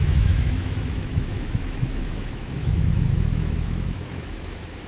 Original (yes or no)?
no